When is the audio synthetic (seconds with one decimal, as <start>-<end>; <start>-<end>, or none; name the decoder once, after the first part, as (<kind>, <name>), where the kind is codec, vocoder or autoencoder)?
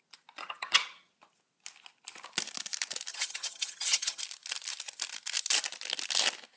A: 0.4-1.1 (vocoder, HiFi-GAN); 3.1-4.2